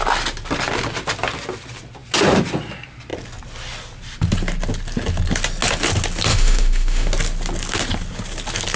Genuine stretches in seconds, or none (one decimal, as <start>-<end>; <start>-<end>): 0.0-6.3; 7.1-8.8